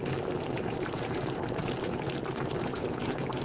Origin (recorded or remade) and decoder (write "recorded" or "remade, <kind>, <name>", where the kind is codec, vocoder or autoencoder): remade, vocoder, BigVGAN v2